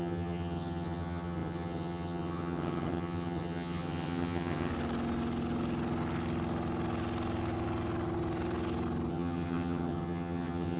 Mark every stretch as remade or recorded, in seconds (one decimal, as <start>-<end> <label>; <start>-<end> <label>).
0.0-4.7 remade; 4.7-9.1 recorded; 9.1-10.8 remade